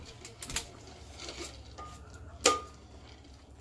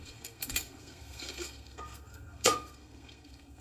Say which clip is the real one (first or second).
first